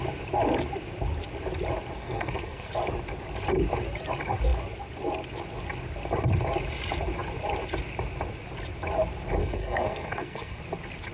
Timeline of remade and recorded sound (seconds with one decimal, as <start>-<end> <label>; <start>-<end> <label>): 0.0-2.0 recorded; 2.0-2.7 remade; 2.7-9.4 recorded; 9.4-10.6 remade; 10.6-11.1 recorded